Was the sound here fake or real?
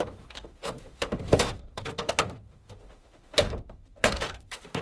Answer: fake